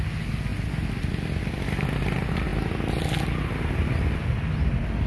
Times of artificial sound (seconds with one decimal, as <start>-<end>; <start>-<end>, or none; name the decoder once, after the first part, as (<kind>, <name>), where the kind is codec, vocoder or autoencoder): none